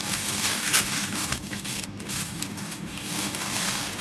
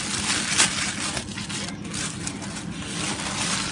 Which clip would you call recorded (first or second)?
second